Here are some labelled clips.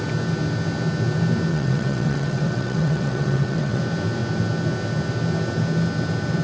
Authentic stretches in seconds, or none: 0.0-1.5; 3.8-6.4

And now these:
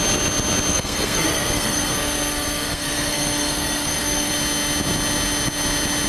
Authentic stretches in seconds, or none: 0.0-0.7; 4.3-6.1

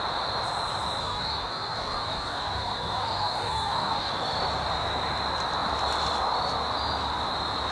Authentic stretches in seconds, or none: 0.0-1.0; 4.1-7.7